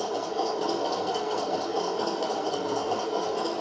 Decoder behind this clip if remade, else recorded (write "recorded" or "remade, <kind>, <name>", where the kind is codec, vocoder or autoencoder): remade, codec, SNAC